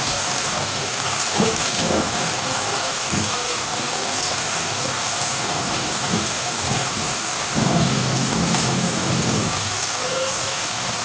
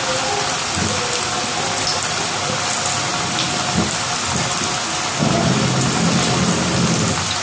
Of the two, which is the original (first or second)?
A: second